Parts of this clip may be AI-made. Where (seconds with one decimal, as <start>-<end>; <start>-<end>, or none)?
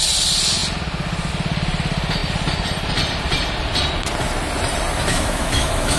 5.1-6.0